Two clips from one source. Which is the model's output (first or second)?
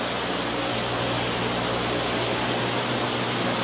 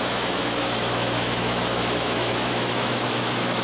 second